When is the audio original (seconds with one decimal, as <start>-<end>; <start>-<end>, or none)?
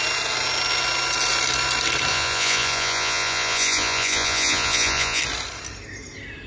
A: 0.0-2.1; 5.2-6.5